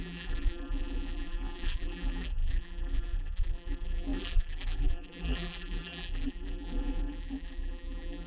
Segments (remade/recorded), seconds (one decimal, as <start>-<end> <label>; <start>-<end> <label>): 0.0-8.3 remade